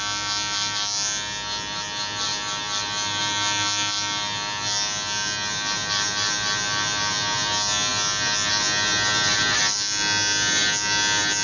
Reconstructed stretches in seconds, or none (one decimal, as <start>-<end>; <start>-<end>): none